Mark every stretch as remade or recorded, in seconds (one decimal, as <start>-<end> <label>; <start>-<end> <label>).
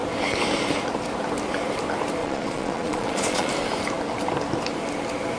0.0-2.2 recorded; 2.2-3.5 remade; 3.5-5.4 recorded